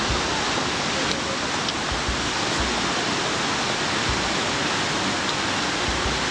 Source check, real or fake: real